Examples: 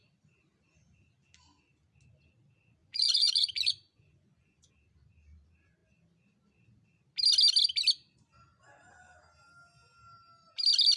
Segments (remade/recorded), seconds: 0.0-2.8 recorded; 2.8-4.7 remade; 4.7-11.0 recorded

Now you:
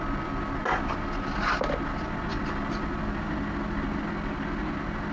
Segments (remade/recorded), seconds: 0.0-5.1 recorded

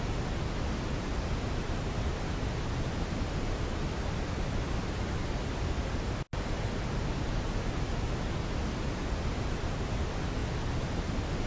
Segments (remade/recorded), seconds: 0.0-11.5 recorded

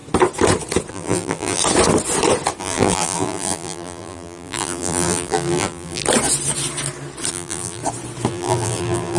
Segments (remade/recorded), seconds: 0.0-0.9 recorded; 0.9-1.6 remade; 1.6-2.6 recorded; 2.6-6.0 remade; 6.0-7.3 recorded; 7.3-7.8 remade; 7.8-8.3 recorded; 8.3-9.2 remade

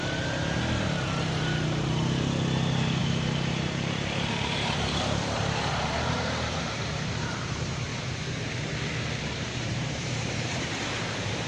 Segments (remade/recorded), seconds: 0.0-7.9 remade; 7.9-9.2 recorded; 9.2-11.5 remade

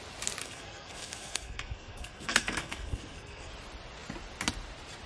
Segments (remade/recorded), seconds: 0.0-0.4 recorded; 0.4-3.5 remade; 3.5-5.1 recorded